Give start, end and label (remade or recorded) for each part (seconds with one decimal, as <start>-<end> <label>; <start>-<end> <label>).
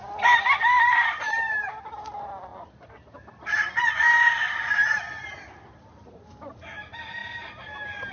0.0-8.1 recorded